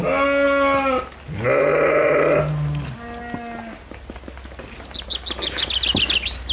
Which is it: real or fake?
real